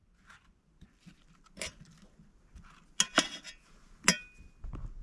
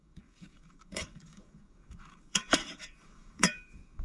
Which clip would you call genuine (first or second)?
first